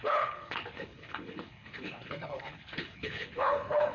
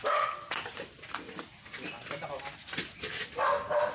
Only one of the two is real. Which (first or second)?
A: second